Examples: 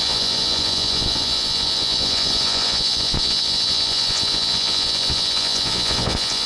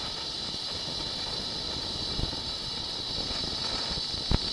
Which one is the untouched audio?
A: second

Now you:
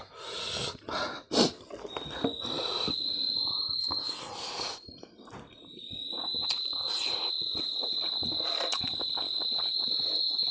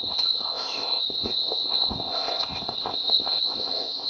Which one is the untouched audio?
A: first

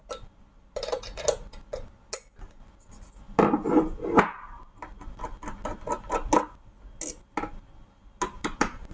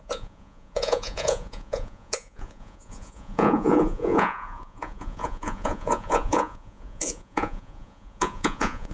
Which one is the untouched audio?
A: first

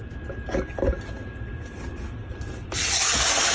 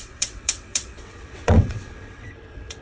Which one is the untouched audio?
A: first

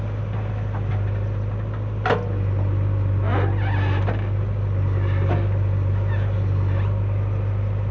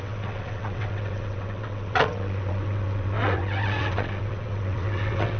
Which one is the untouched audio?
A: first